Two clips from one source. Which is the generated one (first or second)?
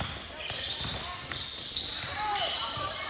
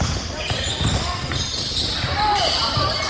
second